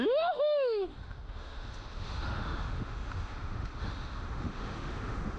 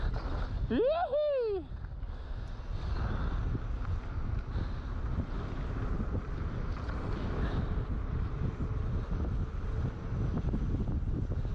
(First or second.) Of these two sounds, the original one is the second